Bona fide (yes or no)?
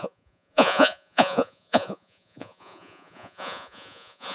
no